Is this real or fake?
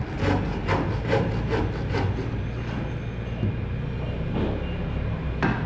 real